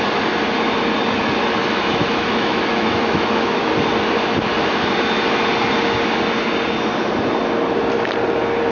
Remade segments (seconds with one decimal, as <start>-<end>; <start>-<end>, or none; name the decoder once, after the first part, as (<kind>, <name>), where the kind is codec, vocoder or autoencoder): 1.6-3.7 (autoencoder, DAC-VAE)